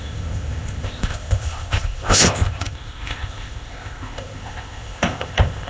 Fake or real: fake